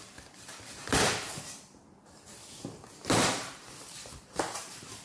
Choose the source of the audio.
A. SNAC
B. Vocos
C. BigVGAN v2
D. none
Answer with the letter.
C